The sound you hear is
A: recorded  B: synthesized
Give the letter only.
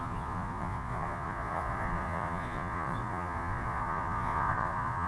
B